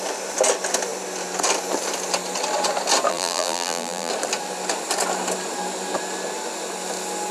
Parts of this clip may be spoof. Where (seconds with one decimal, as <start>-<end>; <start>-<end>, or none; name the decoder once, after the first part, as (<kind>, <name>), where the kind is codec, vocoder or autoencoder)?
3.1-4.1 (vocoder, BigVGAN v2)